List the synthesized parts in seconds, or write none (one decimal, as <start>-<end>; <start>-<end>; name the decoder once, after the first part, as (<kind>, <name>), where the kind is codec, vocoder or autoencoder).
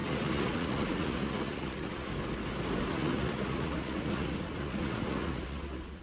0.0-2.1 (vocoder, Vocos); 2.9-6.0